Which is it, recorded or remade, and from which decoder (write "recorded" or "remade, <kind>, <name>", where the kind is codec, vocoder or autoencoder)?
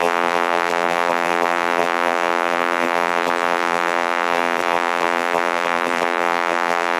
remade, vocoder, BigVGAN v2